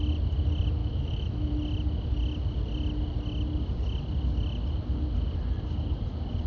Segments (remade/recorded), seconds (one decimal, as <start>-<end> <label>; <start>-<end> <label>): 0.0-0.8 recorded; 0.8-1.5 remade; 1.5-6.5 recorded